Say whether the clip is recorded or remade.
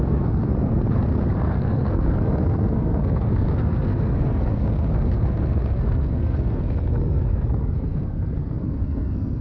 remade